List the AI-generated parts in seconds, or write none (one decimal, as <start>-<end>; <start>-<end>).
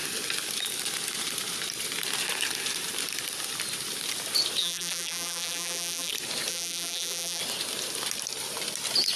4.6-6.1; 6.5-7.4